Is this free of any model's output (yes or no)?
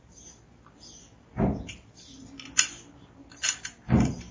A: yes